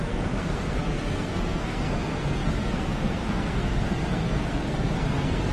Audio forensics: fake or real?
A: fake